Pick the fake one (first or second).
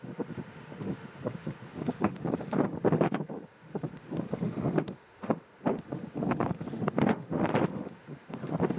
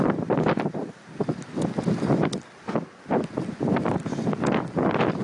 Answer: first